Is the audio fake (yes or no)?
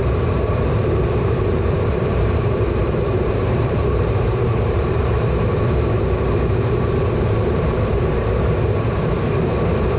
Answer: yes